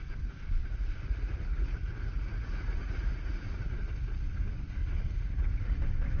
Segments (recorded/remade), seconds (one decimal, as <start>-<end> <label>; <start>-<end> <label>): 0.0-0.6 recorded; 0.6-3.7 remade; 3.7-4.8 recorded; 4.8-5.8 remade; 5.8-6.2 recorded